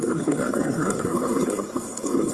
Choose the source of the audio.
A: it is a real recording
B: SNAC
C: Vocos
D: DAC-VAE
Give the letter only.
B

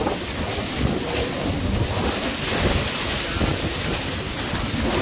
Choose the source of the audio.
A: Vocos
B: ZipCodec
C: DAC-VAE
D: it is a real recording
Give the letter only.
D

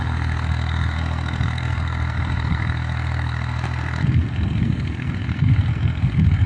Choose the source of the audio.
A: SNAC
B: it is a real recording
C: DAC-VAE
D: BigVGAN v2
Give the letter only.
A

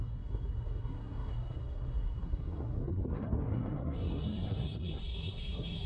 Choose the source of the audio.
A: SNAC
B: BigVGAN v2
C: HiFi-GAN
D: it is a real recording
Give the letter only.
A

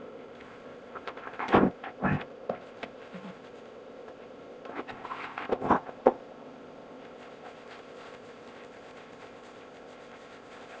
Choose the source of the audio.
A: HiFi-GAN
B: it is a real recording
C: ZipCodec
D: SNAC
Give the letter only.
C